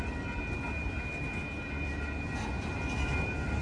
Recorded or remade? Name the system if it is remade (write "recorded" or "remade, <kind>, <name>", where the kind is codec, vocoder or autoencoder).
recorded